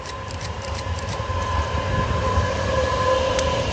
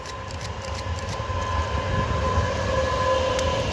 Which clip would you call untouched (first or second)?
second